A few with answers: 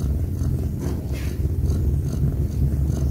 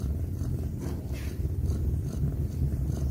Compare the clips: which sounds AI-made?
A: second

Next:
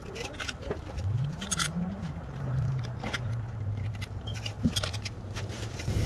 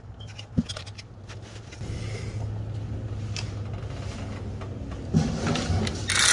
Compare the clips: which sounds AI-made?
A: first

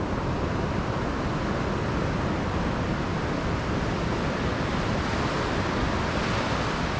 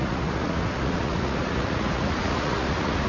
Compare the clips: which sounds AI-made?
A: second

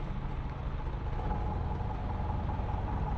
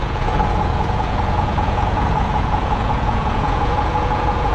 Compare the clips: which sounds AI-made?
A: second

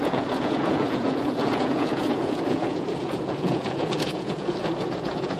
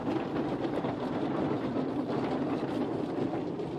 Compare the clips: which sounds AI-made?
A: first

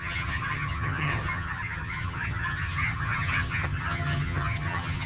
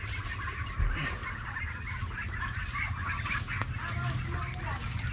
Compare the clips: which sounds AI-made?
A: first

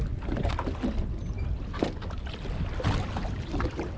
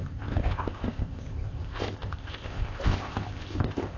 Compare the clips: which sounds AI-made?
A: second